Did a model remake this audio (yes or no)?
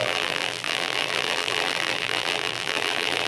yes